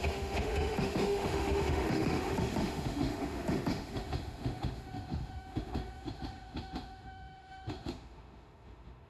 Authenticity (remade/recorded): remade